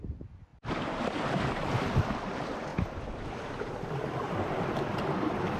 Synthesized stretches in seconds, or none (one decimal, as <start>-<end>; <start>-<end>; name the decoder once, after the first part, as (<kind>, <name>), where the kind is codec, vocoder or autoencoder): 0.5-1.7 (vocoder, BigVGAN v2); 2.7-4.6